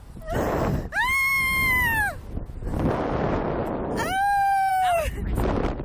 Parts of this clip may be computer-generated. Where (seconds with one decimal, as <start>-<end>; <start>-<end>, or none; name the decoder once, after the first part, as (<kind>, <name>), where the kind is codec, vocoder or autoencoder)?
none